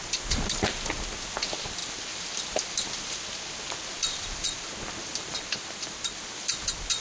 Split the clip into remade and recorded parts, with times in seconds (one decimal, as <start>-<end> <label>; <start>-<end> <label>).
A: 0.0-1.8 recorded; 1.8-2.9 remade; 2.9-5.0 recorded; 5.0-6.5 remade; 6.5-7.0 recorded